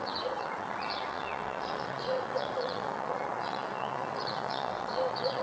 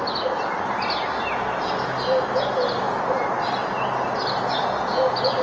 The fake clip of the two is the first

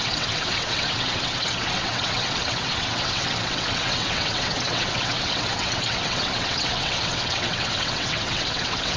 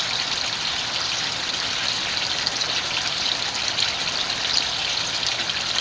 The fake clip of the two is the first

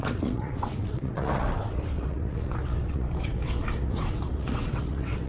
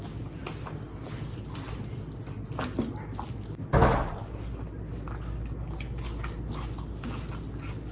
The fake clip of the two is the first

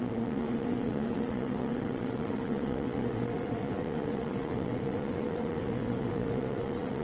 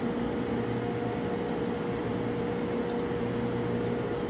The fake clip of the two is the first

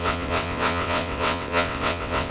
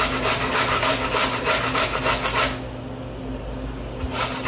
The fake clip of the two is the first